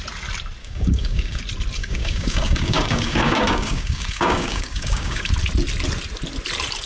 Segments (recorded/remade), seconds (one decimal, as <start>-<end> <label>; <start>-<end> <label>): 0.0-0.6 recorded; 0.6-1.4 remade; 1.4-1.8 recorded; 1.8-5.3 remade; 5.3-6.9 recorded